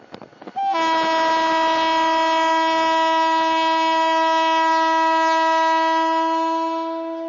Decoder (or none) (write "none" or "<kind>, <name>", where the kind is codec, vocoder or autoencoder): none